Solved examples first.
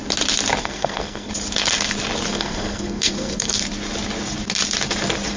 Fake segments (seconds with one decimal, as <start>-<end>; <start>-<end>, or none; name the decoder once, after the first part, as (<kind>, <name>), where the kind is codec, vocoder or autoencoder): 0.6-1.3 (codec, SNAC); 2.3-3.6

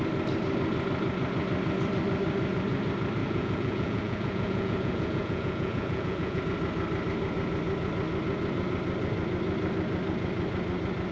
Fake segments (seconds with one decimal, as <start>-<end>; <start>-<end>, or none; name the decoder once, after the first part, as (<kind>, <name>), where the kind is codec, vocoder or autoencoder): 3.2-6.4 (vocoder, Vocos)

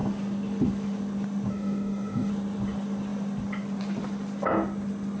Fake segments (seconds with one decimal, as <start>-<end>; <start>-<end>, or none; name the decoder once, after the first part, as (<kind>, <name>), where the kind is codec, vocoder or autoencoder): 1.5-2.3 (codec, DAC)

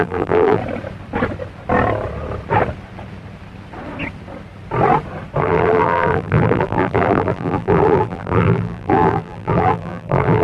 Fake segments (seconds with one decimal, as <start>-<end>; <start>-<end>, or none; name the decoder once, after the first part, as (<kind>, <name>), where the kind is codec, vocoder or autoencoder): 0.0-0.6 (vocoder, BigVGAN v2); 5.4-10.4

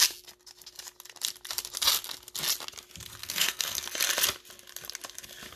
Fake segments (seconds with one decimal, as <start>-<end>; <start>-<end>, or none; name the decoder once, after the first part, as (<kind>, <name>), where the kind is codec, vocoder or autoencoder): 3.2-3.8 (codec, SNAC)

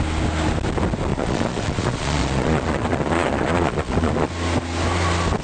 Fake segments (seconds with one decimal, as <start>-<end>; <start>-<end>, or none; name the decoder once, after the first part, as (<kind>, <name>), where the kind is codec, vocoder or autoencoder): 1.1-4.3 (vocoder, Vocos)

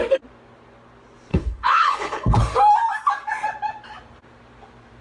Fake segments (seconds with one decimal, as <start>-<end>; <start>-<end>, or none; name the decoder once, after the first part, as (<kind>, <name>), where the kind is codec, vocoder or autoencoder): 1.3-2.4 (codec, HILCodec)

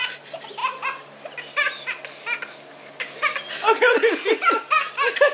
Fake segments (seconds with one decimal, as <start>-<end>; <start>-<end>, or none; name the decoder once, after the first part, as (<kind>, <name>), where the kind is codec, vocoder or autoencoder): none